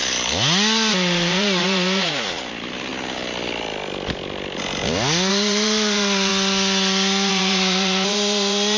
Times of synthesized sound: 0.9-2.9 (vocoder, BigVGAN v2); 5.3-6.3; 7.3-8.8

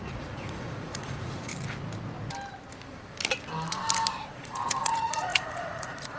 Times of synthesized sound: 0.0-1.5 (vocoder, Vocos); 4.3-6.2

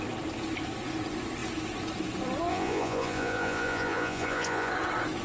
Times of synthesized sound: 2.5-4.7 (vocoder, Vocos)

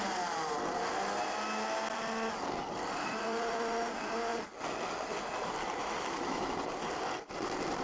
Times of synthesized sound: 5.8-6.5 (autoencoder, DAC-VAE)

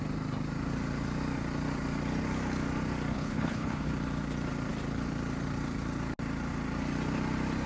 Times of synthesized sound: 3.1-3.9 (codec, HILCodec)

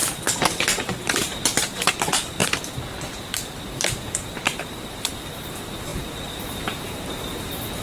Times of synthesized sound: 0.0-2.4 (vocoder, BigVGAN v2); 3.6-7.8

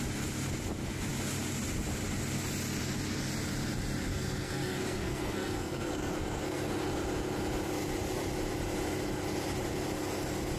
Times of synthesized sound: 4.1-6.7 (codec, SNAC)

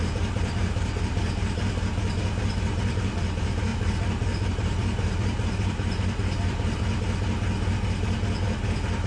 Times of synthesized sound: 0.0-6.8 (vocoder, BigVGAN v2)